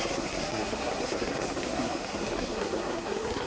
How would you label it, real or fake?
fake